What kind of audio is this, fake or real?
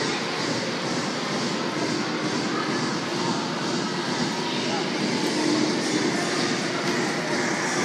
real